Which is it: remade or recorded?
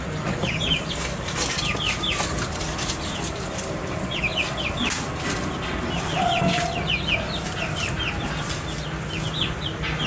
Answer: recorded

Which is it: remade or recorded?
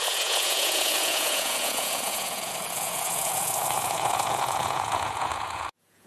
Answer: remade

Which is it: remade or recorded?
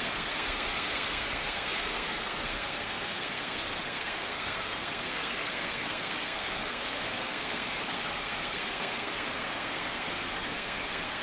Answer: remade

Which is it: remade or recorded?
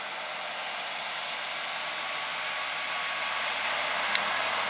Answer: recorded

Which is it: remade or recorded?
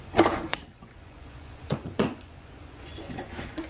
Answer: remade